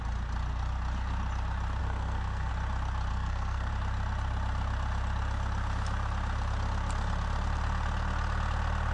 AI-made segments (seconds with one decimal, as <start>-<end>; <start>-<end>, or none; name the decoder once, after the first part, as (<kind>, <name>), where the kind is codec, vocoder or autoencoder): 1.8-2.5 (codec, SNAC); 3.1-3.7